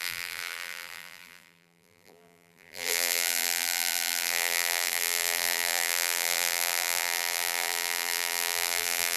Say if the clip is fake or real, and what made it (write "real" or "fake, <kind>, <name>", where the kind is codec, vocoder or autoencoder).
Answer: fake, vocoder, BigVGAN v2